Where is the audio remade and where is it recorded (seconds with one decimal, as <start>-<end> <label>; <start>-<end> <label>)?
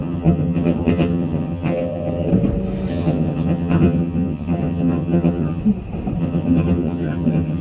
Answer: 0.0-2.3 remade; 2.3-2.9 recorded; 2.9-5.6 remade; 5.6-6.2 recorded; 6.2-7.6 remade